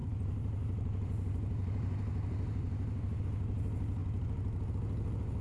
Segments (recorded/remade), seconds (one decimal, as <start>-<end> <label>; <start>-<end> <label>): 0.0-3.2 remade; 3.2-4.0 recorded; 4.0-4.7 remade; 4.7-5.4 recorded